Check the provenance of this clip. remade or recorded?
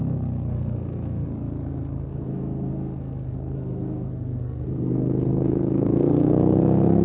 remade